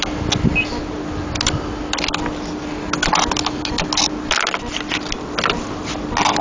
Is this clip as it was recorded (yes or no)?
yes